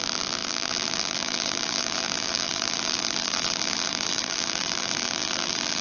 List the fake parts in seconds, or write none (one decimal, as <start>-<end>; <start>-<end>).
0.0-5.8